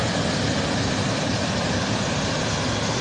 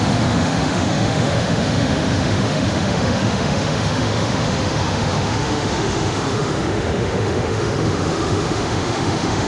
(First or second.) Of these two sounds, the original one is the first